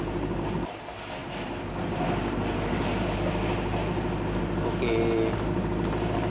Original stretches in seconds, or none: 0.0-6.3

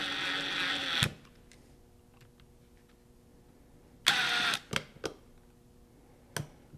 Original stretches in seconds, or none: 0.0-6.8

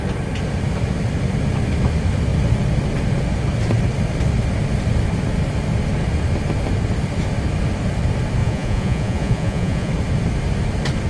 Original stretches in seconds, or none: 0.0-8.4; 9.9-11.1

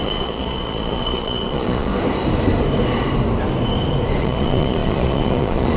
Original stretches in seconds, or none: 1.9-4.2

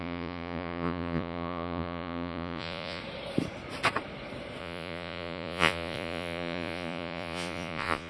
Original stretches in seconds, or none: 3.0-4.6

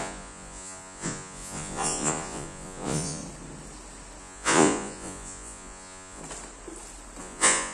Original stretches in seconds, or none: 3.2-4.2; 6.2-7.2